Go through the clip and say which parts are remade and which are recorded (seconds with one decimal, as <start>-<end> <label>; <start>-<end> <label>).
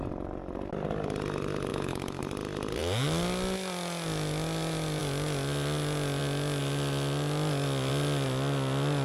0.0-1.7 recorded; 1.7-2.2 remade; 2.2-9.0 recorded